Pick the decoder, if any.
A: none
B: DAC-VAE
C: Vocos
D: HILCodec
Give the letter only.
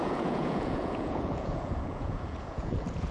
C